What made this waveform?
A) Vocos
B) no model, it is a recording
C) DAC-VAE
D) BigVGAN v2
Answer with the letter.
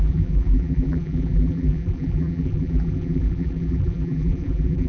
D